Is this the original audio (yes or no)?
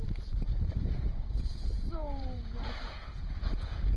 no